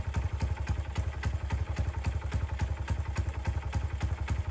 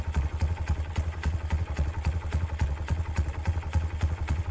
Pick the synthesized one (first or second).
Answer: second